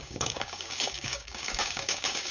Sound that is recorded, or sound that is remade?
remade